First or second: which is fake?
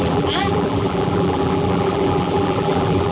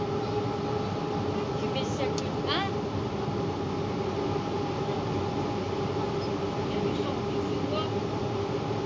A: first